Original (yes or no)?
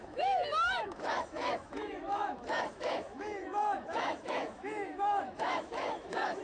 no